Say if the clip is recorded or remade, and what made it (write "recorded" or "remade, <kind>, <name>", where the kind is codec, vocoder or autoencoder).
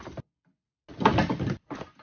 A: recorded